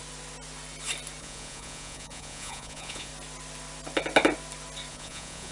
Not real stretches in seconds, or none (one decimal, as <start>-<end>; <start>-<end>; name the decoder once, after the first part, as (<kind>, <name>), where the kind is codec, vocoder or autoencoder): 1.2-3.1 (vocoder, Vocos); 4.9-5.5